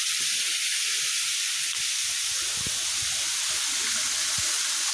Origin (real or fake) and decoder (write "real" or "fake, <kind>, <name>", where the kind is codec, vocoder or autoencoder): real